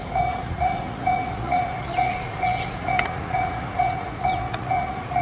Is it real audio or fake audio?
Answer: fake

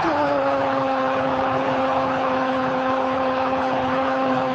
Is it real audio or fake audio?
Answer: fake